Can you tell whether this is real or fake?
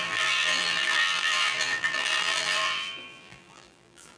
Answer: fake